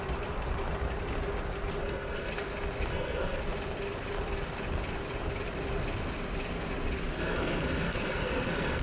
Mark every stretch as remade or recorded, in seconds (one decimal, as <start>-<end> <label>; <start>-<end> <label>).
0.0-1.8 recorded; 1.8-2.3 remade; 2.3-2.9 recorded; 2.9-3.4 remade; 3.4-7.2 recorded; 7.2-8.8 remade